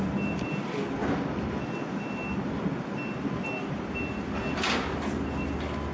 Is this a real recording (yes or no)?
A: yes